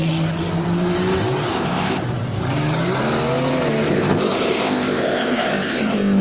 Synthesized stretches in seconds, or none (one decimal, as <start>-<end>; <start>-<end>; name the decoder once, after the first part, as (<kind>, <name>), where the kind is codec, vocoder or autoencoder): 1.5-2.0 (codec, ZipCodec); 3.9-6.2